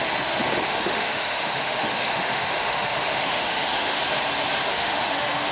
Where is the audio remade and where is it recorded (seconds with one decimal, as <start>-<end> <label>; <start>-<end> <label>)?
0.0-0.7 recorded; 0.7-4.0 remade; 4.0-4.7 recorded; 4.7-5.5 remade